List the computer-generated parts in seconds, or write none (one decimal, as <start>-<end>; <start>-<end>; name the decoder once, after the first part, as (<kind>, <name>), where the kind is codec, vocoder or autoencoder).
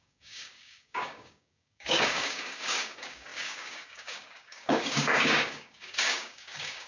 0.0-6.9 (codec, DAC)